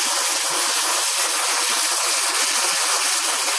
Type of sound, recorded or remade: recorded